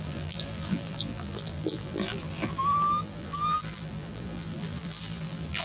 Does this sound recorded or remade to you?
remade